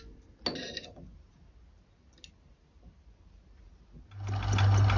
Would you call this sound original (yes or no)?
yes